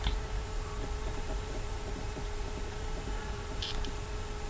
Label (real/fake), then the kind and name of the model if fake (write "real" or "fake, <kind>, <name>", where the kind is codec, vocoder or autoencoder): fake, vocoder, BigVGAN v2